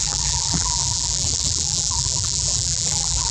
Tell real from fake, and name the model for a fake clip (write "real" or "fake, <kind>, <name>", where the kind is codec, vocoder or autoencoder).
fake, vocoder, BigVGAN v2